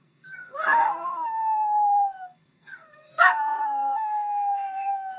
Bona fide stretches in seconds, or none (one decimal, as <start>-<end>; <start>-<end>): none